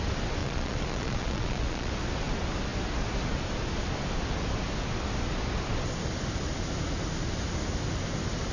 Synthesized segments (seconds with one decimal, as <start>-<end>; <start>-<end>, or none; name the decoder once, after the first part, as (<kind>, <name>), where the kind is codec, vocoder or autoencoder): 0.4-1.9 (vocoder, Vocos)